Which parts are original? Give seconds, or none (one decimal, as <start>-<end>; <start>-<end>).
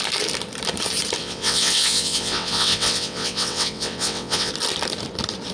0.0-1.2; 4.5-5.5